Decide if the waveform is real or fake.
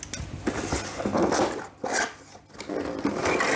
real